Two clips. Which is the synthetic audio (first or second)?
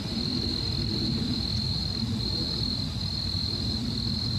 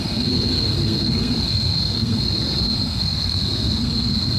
second